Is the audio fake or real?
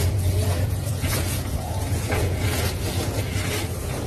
fake